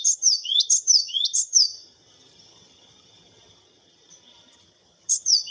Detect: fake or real fake